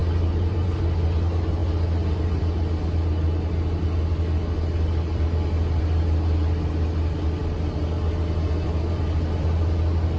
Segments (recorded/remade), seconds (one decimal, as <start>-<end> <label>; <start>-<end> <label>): 0.0-0.8 remade; 0.8-10.2 recorded